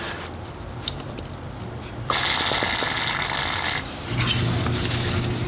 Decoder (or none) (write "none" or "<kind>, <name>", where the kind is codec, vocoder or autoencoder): none